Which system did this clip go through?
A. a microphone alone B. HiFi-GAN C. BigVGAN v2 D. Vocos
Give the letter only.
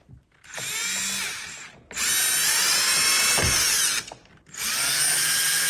A